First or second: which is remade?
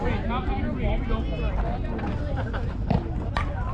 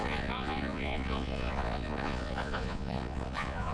second